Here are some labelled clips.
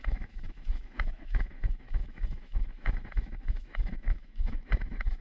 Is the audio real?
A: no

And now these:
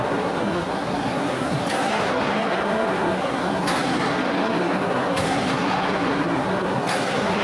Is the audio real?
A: no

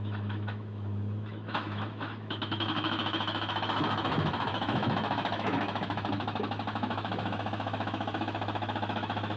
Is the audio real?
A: no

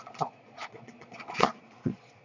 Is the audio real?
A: no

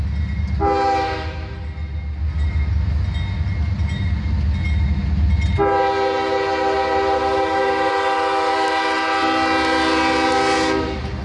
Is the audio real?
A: yes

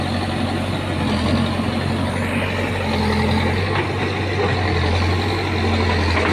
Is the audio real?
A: yes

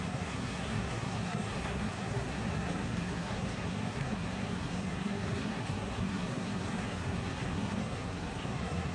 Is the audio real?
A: no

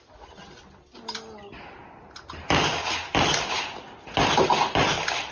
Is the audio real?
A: yes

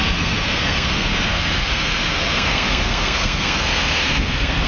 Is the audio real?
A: no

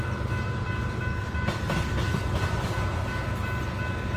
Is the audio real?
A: yes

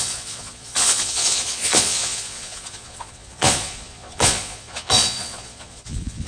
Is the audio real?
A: no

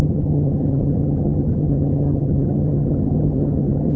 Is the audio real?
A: no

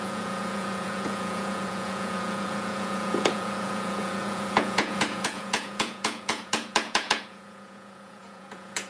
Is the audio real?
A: no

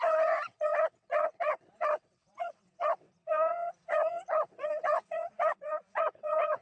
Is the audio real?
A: no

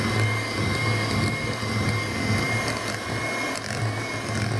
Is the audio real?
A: yes